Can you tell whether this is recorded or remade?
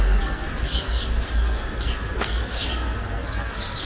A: remade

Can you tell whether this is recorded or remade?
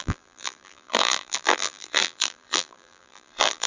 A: remade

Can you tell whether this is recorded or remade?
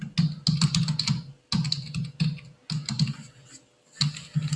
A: recorded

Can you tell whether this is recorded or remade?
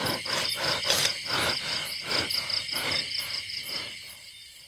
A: recorded